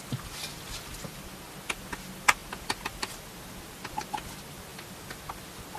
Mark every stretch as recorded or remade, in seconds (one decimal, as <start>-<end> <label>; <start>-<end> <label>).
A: 0.0-2.4 recorded; 2.4-3.2 remade; 3.2-5.8 recorded